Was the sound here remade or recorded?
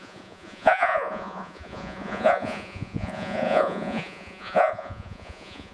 remade